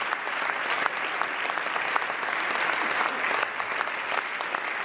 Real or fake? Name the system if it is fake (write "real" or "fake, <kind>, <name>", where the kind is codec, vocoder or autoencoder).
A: real